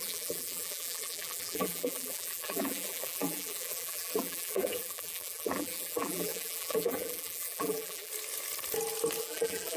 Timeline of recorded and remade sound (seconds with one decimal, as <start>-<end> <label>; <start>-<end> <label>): 0.0-8.1 remade; 8.1-9.2 recorded; 9.2-9.8 remade

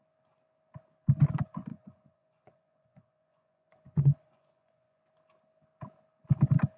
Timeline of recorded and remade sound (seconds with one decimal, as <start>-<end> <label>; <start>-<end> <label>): 0.0-1.7 recorded; 1.7-5.0 remade; 5.0-6.8 recorded

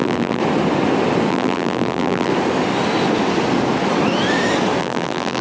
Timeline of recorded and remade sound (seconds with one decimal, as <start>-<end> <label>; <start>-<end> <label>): 0.0-0.4 remade; 0.4-1.3 recorded; 1.3-2.3 remade; 2.3-4.8 recorded; 4.8-5.4 remade

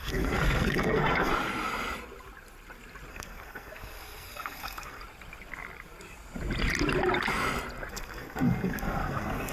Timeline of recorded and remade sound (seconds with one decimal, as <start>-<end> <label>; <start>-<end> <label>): 0.0-1.3 remade; 1.3-3.1 recorded; 3.1-5.0 remade; 5.0-7.9 recorded; 7.9-9.5 remade

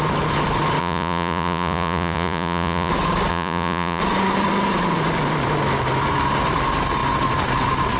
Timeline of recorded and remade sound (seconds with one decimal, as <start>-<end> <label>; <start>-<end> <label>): 0.0-0.8 recorded; 0.8-2.9 remade; 2.9-3.3 recorded; 3.3-4.0 remade; 4.0-8.0 recorded

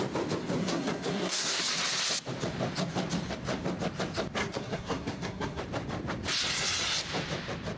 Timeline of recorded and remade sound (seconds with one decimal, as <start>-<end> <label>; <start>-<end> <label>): 0.0-0.6 recorded; 0.6-1.6 remade; 1.6-4.4 recorded; 4.4-5.6 remade; 5.6-7.8 recorded

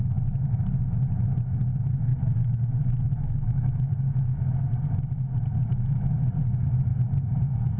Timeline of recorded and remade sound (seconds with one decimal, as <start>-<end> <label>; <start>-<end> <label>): 0.0-2.1 recorded; 2.1-4.6 remade; 4.6-7.8 recorded

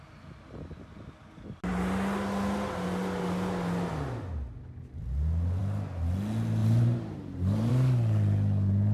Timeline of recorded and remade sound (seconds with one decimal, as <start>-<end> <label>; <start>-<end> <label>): 0.0-6.6 recorded; 6.6-7.7 remade; 7.7-8.9 recorded